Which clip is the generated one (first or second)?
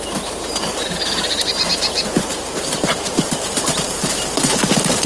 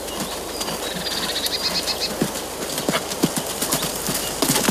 first